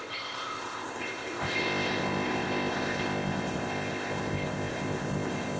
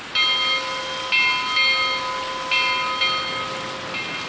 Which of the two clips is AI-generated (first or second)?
first